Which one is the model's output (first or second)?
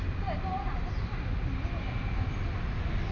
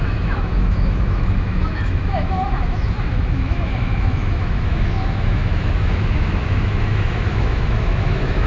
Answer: second